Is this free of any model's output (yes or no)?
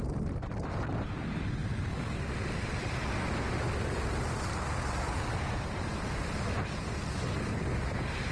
yes